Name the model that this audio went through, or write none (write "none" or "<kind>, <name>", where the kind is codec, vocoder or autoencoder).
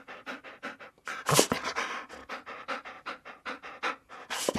none